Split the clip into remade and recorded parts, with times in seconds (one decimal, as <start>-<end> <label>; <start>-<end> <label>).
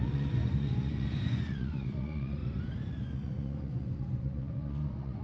0.0-2.4 remade; 2.4-2.9 recorded; 2.9-5.2 remade